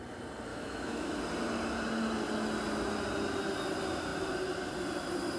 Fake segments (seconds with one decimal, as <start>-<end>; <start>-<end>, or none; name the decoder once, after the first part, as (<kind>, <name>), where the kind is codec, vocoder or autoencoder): 0.5-1.2 (autoencoder, DAC-VAE)